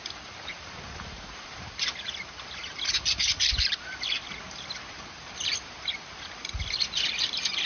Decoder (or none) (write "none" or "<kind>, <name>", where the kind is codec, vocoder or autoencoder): vocoder, BigVGAN v2